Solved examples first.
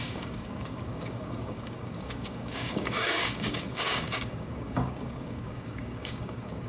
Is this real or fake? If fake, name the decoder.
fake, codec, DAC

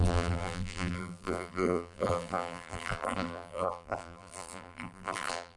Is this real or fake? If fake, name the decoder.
fake, vocoder, BigVGAN v2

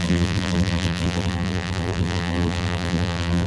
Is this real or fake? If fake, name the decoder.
fake, vocoder, BigVGAN v2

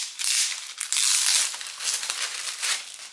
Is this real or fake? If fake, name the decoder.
real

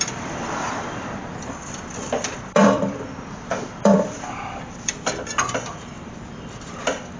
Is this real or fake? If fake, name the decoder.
fake, vocoder, BigVGAN v2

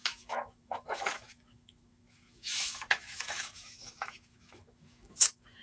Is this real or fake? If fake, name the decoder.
fake, autoencoder, DAC-VAE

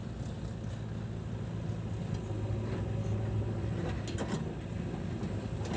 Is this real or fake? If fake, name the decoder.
real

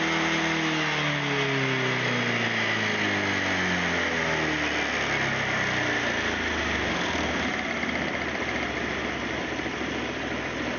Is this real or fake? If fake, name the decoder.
real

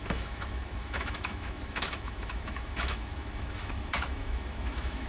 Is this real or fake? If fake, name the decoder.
fake, autoencoder, DAC-VAE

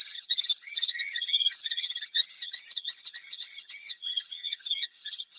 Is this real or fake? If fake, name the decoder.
fake, vocoder, HiFi-GAN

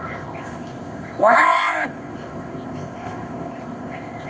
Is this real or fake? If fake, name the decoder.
fake, codec, ZipCodec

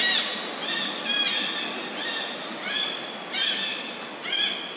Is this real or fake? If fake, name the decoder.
real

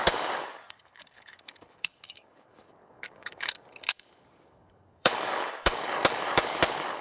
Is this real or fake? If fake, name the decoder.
fake, codec, DAC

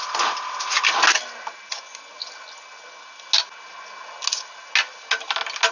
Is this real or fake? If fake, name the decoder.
real